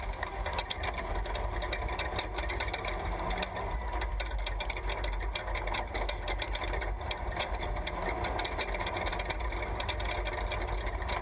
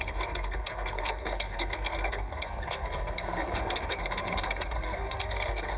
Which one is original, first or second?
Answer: first